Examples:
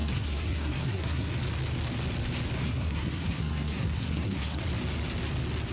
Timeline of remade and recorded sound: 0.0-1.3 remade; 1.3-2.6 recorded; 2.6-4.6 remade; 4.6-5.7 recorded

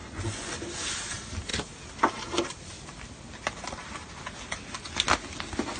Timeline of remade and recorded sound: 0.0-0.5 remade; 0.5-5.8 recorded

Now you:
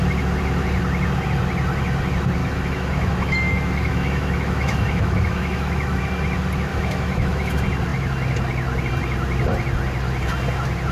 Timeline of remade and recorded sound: 0.0-2.4 recorded; 2.4-6.0 remade; 6.0-6.7 recorded; 6.7-7.5 remade; 7.5-10.9 recorded

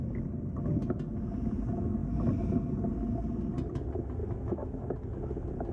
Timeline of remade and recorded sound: 0.0-4.2 recorded; 4.2-4.8 remade; 4.8-5.7 recorded

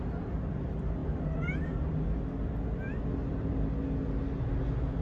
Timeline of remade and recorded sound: 0.0-5.0 recorded

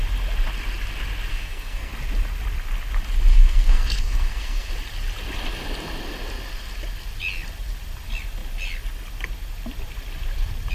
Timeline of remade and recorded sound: 0.0-1.3 recorded; 1.3-1.9 remade; 1.9-3.3 recorded; 3.3-4.7 remade; 4.7-10.7 recorded